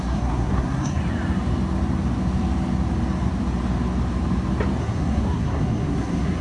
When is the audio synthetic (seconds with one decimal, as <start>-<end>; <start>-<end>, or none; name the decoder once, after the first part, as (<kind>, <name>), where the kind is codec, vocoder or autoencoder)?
0.0-1.0 (codec, SNAC); 4.8-6.4